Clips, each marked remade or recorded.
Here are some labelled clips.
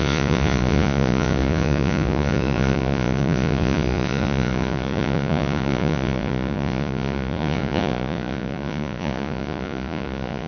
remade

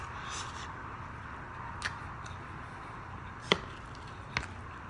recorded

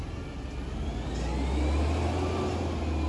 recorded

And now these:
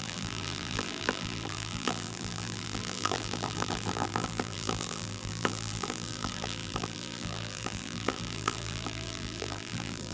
remade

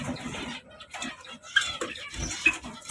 recorded